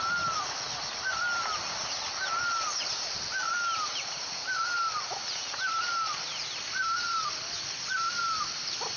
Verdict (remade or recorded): recorded